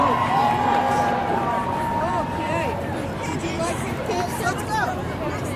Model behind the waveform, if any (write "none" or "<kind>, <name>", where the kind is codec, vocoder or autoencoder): vocoder, BigVGAN v2